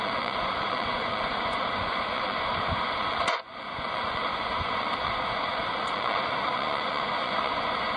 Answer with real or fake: fake